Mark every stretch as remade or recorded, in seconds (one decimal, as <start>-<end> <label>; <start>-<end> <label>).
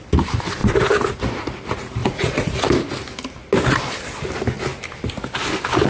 0.0-2.0 recorded; 2.0-2.6 remade; 2.6-5.9 recorded